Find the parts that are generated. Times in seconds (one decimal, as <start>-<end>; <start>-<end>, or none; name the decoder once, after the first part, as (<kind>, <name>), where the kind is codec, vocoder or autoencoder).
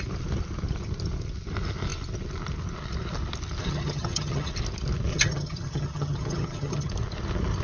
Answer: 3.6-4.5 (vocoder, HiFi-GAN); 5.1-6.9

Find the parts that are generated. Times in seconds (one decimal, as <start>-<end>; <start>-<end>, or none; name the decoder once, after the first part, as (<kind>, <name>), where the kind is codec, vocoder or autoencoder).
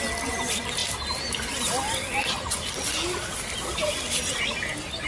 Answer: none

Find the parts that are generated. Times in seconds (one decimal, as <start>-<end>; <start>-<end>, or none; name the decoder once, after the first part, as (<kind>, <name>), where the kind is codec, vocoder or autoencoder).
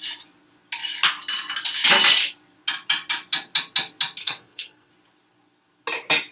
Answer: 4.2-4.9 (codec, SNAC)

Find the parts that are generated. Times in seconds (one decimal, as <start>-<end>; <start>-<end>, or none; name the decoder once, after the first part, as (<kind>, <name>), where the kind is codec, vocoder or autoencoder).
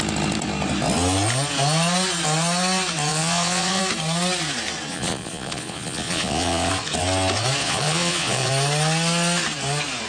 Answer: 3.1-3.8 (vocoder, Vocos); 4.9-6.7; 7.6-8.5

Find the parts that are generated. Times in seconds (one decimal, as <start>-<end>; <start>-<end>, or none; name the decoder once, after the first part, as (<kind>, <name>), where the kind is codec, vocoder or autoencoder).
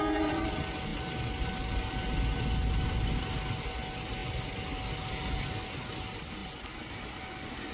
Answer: none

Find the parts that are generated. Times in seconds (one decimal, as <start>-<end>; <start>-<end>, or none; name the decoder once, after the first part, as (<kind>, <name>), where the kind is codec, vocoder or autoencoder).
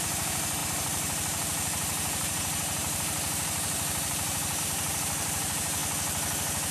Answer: 0.0-5.8 (vocoder, BigVGAN v2)